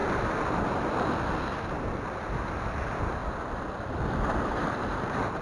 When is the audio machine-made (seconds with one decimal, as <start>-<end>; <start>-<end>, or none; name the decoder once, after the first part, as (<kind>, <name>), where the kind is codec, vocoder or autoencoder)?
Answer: 2.8-3.2 (vocoder, BigVGAN v2); 4.4-5.4